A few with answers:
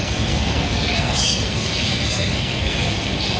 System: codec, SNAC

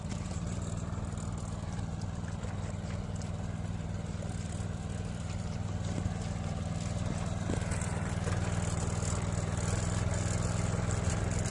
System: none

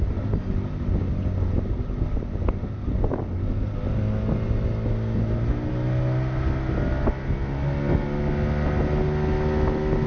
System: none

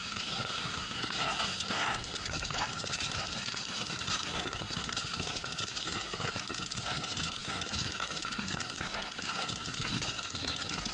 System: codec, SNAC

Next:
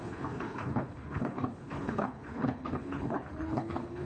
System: codec, HILCodec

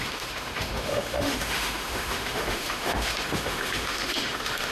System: autoencoder, DAC-VAE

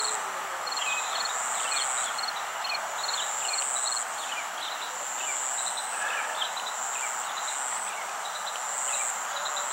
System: none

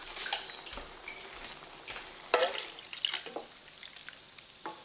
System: none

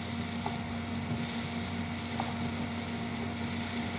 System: none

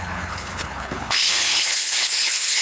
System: codec, HILCodec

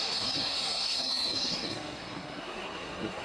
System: codec, SNAC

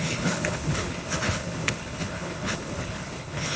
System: codec, HILCodec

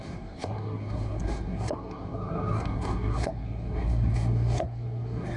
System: codec, SNAC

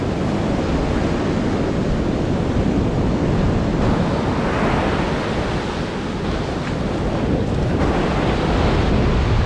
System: none